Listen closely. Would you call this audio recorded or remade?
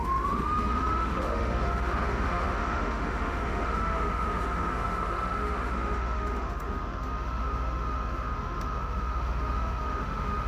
remade